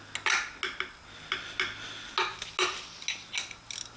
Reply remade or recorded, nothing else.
recorded